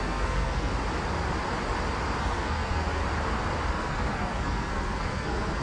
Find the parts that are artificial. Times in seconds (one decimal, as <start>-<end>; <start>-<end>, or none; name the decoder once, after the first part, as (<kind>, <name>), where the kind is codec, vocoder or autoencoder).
0.0-0.7 (codec, SNAC); 2.2-3.0; 3.7-5.6